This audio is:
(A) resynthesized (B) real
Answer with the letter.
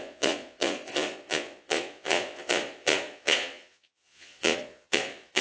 A